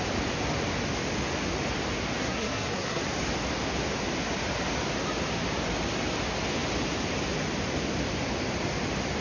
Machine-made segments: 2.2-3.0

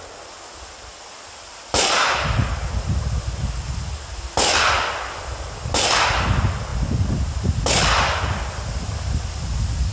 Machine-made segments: none

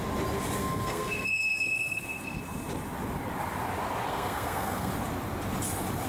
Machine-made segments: 0.6-2.4; 4.1-4.9

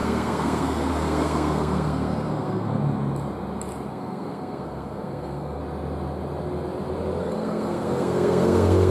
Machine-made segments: 0.0-2.8; 3.9-5.6; 7.2-8.9

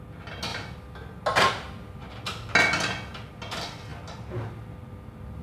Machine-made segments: none